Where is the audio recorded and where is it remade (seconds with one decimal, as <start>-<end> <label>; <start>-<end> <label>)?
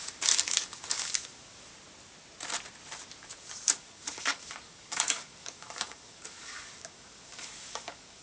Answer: 0.0-1.7 remade; 1.7-3.2 recorded; 3.2-8.2 remade